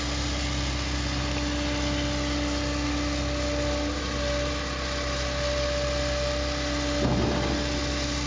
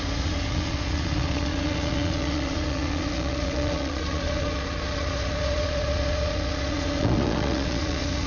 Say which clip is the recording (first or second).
first